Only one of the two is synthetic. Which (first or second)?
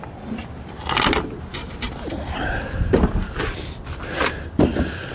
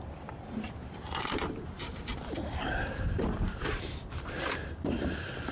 second